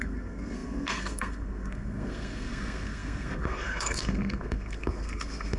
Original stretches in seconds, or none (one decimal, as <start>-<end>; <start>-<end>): none